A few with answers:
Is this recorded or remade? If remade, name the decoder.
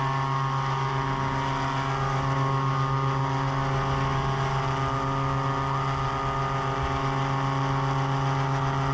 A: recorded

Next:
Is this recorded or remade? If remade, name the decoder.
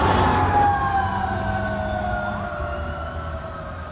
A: recorded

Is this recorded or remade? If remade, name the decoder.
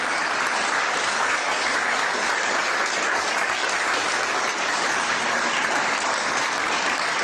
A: remade, codec, DAC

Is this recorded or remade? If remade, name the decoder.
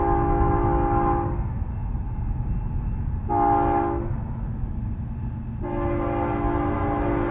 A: recorded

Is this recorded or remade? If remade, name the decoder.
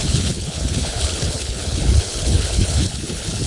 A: remade, codec, HILCodec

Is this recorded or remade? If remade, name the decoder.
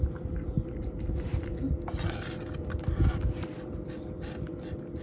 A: recorded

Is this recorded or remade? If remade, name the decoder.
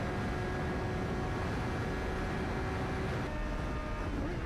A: recorded